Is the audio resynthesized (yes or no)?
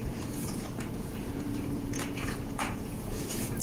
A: yes